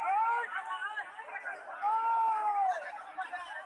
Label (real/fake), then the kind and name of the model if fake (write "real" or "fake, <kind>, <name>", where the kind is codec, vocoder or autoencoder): real